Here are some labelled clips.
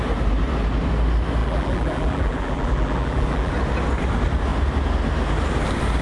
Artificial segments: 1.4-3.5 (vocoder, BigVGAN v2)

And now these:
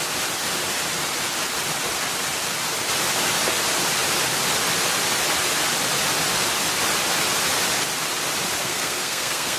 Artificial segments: 8.6-9.6 (codec, SNAC)

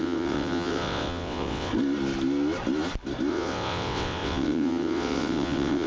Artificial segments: 0.0-1.7 (vocoder, WaveNeXt); 3.3-5.9

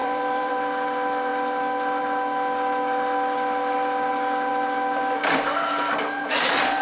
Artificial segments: 0.0-0.5 (vocoder, BigVGAN v2)